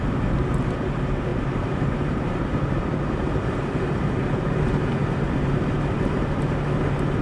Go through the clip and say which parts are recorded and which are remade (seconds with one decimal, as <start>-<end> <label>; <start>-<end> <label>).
0.0-1.3 recorded; 1.3-5.6 remade; 5.6-7.2 recorded